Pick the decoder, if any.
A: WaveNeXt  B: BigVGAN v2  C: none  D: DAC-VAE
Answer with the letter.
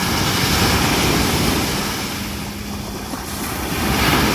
C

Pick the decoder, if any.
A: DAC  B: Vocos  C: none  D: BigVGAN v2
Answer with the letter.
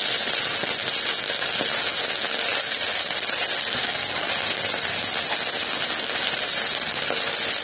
C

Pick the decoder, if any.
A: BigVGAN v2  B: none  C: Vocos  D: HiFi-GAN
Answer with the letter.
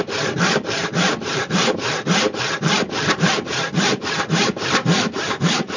A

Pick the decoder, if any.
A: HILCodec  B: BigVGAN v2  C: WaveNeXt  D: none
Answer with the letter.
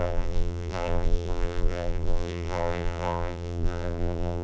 B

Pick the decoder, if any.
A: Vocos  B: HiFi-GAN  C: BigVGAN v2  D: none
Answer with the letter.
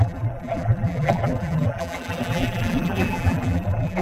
C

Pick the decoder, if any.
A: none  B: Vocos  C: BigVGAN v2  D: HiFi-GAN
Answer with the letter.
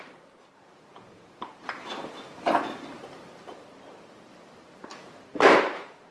C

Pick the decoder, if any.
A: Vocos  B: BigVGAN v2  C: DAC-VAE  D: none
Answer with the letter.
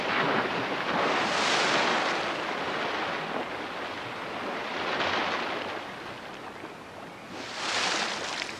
D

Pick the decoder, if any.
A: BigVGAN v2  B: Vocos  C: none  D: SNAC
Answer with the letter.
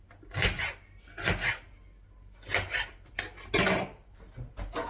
C